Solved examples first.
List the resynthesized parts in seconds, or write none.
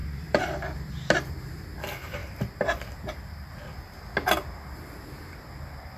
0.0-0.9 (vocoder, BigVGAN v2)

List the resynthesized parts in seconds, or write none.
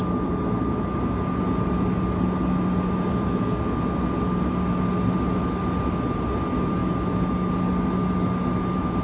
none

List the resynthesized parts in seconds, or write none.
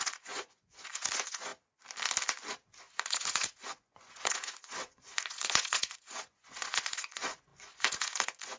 0.0-1.5 (vocoder, Vocos); 2.8-8.6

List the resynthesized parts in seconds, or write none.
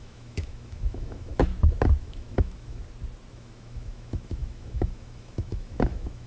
0.0-1.5 (autoencoder, DAC-VAE); 2.0-2.8; 3.3-6.3